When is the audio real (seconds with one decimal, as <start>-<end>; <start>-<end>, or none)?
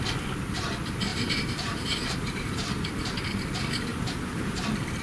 0.0-1.1; 2.9-3.9; 4.6-5.0